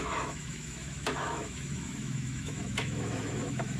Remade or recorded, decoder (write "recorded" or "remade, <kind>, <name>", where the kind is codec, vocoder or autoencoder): remade, autoencoder, DAC-VAE